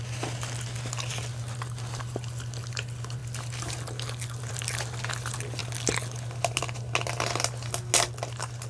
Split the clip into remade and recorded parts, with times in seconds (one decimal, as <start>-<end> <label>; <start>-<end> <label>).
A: 0.0-8.7 recorded